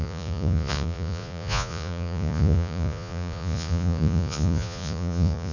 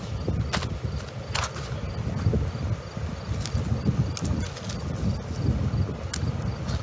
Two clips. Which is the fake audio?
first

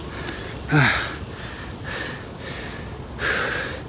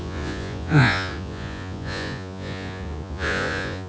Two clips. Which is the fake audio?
second